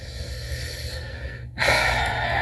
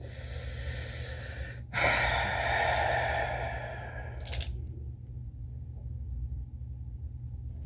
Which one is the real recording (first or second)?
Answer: second